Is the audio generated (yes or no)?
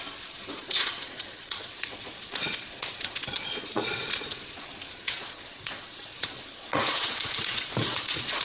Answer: yes